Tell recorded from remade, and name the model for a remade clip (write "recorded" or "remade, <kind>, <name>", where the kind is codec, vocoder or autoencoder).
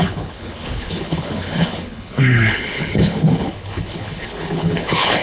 remade, codec, HILCodec